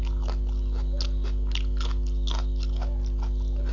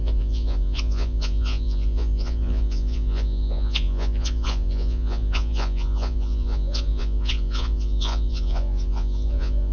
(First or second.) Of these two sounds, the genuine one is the first